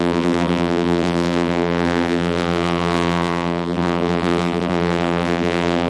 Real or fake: fake